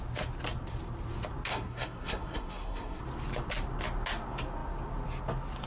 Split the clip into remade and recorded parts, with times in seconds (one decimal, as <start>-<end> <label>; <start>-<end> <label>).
0.0-1.5 recorded; 1.5-3.0 remade; 3.0-5.7 recorded